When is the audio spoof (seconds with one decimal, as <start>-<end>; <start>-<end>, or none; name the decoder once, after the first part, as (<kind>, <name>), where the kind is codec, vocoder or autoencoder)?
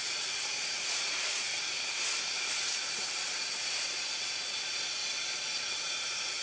0.0-1.5 (vocoder, Vocos); 3.8-5.0; 5.7-6.4